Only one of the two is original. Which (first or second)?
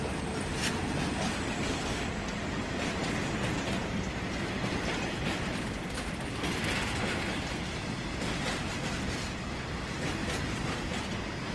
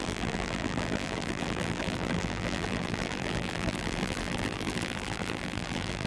first